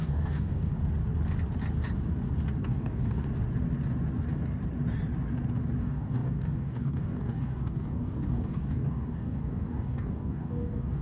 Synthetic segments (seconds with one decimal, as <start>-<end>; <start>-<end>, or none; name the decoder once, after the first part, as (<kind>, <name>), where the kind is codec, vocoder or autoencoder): 0.0-0.7 (codec, DAC); 2.6-3.2; 5.8-11.0